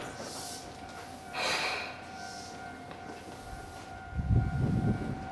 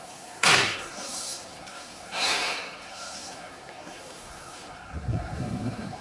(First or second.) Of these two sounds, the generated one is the second